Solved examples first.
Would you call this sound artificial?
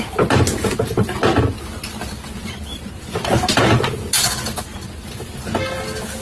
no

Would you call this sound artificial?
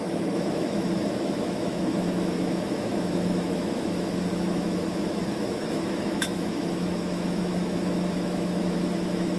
yes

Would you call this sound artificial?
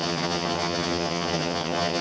yes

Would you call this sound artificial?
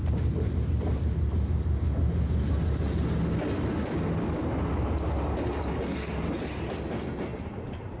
no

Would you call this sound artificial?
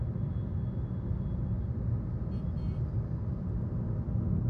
no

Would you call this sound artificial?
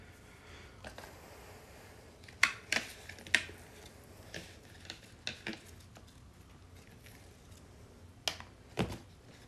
no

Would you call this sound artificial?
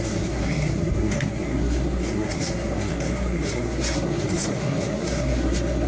yes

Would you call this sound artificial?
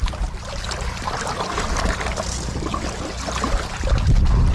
no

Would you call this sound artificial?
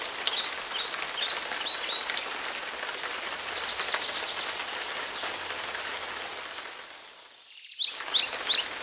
no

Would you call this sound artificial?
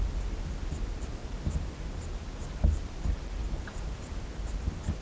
no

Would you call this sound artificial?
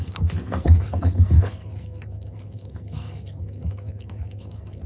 yes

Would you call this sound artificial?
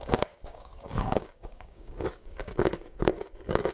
yes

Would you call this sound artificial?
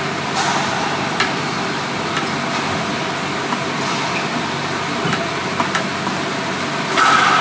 no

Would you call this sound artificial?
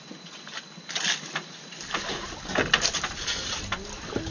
no